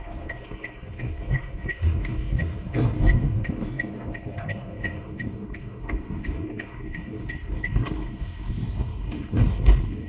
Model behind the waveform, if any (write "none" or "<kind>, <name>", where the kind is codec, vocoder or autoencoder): codec, SNAC